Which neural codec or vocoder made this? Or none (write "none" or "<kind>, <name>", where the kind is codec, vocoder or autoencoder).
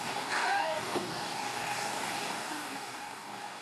codec, DAC